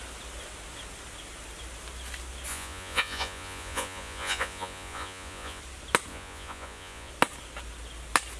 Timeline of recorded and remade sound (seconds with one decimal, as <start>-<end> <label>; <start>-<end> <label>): 0.0-2.5 recorded; 2.5-5.6 remade; 5.6-6.1 recorded; 6.1-7.1 remade; 7.1-8.4 recorded